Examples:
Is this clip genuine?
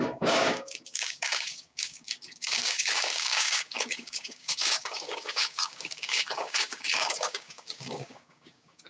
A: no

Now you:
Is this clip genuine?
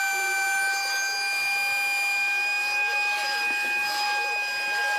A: yes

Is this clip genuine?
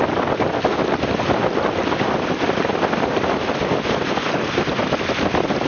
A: yes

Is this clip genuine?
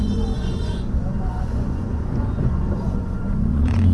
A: no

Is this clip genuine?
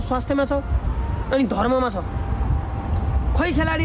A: yes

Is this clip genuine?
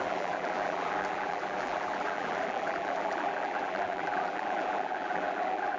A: no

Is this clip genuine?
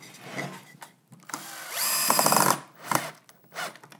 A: yes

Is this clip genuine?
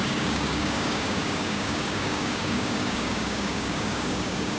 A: no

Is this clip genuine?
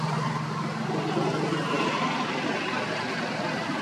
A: yes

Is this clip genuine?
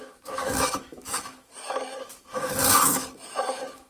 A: no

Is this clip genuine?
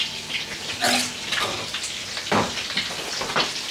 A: yes